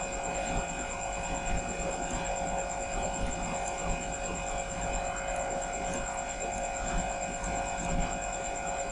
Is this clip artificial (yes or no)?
no